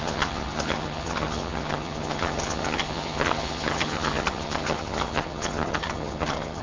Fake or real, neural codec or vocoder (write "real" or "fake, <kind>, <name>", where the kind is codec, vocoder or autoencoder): fake, vocoder, HiFi-GAN